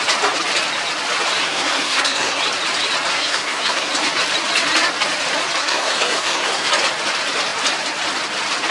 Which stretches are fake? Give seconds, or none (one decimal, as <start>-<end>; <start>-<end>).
1.4-2.4; 3.1-3.9; 5.6-6.7